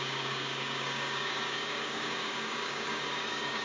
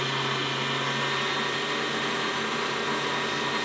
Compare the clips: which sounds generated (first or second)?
first